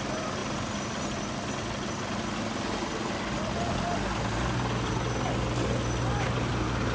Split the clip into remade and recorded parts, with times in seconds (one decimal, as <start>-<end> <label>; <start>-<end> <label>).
0.0-6.9 recorded